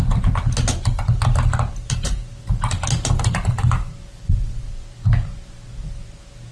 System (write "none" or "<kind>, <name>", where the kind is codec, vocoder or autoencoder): none